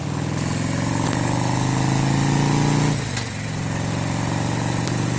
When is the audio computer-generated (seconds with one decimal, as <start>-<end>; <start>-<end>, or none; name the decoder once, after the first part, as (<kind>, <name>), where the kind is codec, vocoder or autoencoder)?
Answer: none